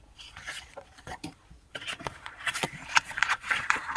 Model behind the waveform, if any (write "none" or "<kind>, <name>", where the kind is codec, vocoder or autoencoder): vocoder, Vocos